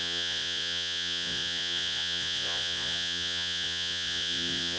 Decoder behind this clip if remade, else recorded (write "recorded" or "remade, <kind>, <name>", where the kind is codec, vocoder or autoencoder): remade, vocoder, Vocos